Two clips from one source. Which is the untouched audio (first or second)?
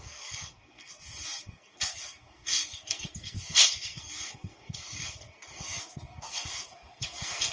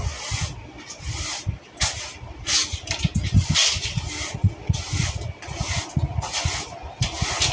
second